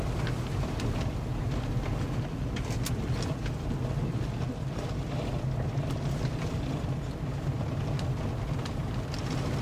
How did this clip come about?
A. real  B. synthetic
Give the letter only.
A